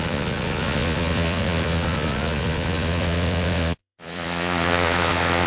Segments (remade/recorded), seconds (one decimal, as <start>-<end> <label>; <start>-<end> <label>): 0.0-5.5 remade